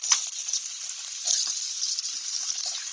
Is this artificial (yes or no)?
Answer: no